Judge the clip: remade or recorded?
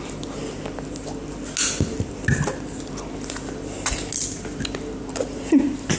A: recorded